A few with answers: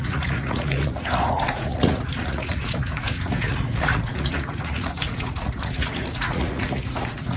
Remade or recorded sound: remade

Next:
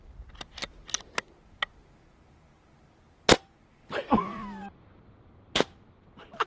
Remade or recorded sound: recorded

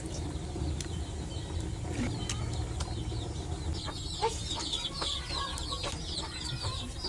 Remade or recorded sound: recorded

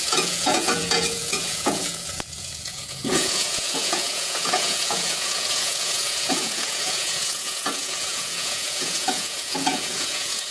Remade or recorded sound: remade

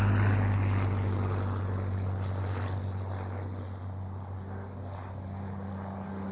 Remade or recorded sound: recorded